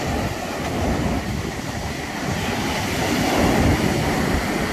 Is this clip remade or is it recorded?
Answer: recorded